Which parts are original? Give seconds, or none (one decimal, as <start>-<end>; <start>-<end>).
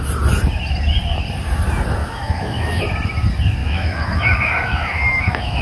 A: 0.0-2.0; 2.8-3.6